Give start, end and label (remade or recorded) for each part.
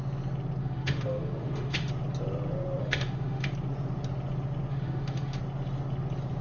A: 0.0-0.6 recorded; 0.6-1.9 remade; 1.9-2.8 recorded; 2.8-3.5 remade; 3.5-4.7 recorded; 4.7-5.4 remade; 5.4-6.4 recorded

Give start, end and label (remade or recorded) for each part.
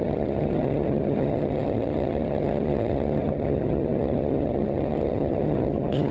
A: 0.0-6.1 remade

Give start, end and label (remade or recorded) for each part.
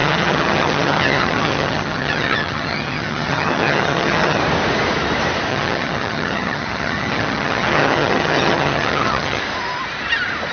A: 0.0-4.4 remade; 4.4-5.5 recorded; 5.5-9.4 remade; 9.4-10.5 recorded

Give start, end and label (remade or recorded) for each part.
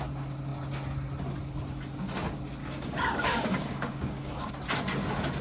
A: 0.0-2.6 recorded; 2.6-4.5 remade; 4.5-5.4 recorded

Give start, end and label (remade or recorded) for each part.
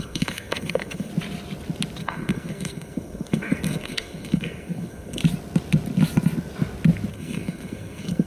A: 0.0-1.1 remade; 1.1-2.0 recorded; 2.0-5.2 remade; 5.2-7.1 recorded; 7.1-8.3 remade